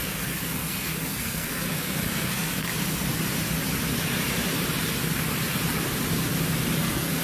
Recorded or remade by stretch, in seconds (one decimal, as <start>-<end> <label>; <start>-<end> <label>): 0.0-2.7 remade; 2.7-6.8 recorded; 6.8-7.2 remade